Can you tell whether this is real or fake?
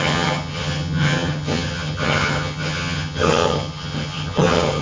fake